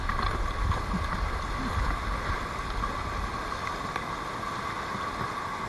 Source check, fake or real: real